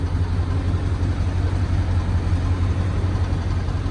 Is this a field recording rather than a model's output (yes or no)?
yes